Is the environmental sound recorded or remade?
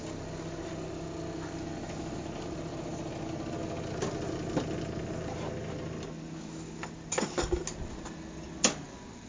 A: recorded